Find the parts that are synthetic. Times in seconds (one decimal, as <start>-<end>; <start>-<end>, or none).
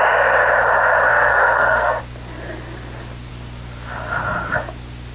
1.1-2.0